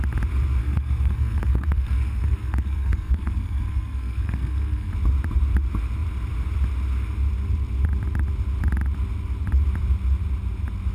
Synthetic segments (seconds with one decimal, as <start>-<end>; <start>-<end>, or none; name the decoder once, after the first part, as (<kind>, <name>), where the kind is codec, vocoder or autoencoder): 0.6-4.9 (codec, SNAC)